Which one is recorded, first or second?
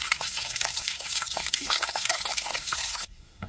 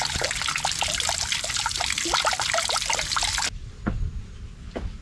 second